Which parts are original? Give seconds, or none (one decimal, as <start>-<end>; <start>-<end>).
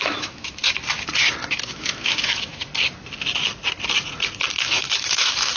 0.6-1.5; 2.7-4.6